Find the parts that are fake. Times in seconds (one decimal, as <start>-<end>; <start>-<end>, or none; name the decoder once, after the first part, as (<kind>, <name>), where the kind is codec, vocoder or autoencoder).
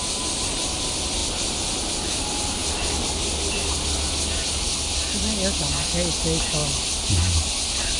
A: none